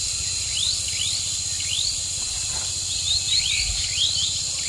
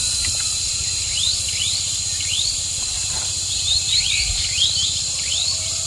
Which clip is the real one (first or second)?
first